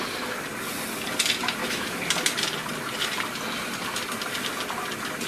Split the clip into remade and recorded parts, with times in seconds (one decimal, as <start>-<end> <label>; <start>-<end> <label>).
0.0-1.6 recorded; 1.6-2.1 remade; 2.1-5.3 recorded